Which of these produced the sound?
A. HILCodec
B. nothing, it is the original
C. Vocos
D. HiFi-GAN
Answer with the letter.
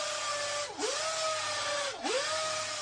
B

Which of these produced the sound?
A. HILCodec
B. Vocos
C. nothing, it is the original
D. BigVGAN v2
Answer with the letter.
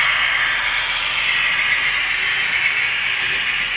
C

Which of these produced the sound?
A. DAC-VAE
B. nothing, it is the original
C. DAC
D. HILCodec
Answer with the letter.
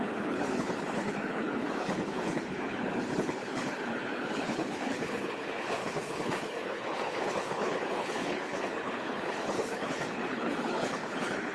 D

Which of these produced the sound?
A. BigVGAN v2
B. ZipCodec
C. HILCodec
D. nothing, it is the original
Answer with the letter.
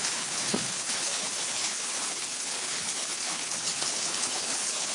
C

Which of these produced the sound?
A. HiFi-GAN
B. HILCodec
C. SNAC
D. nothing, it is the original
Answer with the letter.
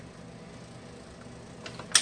D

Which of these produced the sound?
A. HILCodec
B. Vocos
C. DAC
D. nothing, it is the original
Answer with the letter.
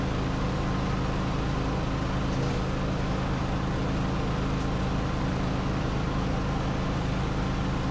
D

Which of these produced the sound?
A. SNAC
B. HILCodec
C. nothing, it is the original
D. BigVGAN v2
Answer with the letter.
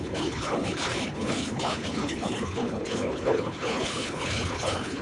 B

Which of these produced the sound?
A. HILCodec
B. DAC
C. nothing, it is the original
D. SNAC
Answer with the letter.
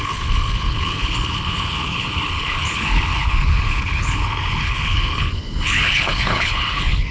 A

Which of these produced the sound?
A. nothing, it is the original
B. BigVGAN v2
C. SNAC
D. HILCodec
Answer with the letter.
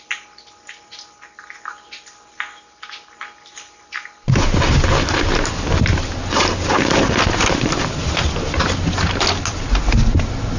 A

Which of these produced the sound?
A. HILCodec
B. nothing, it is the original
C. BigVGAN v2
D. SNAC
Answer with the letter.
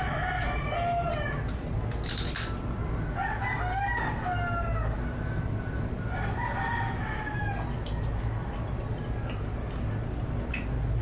B